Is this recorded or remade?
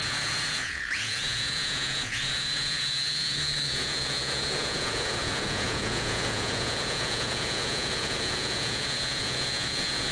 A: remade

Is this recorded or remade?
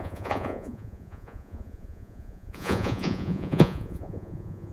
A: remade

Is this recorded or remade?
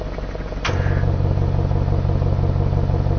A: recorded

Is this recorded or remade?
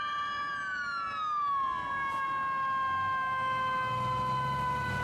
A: recorded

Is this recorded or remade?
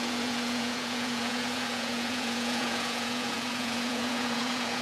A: remade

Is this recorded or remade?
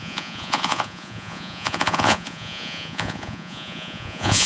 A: remade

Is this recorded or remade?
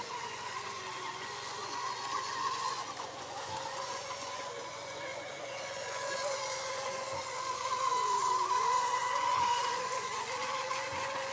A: remade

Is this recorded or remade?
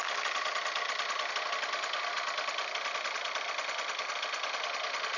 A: recorded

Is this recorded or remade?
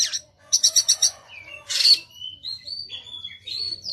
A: remade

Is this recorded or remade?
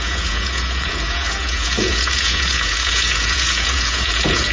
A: remade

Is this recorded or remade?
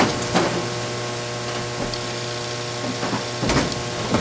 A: recorded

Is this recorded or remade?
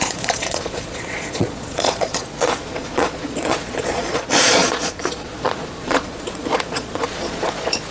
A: remade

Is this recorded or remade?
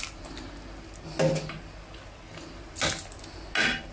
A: recorded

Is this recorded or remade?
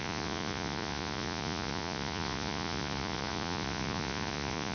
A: remade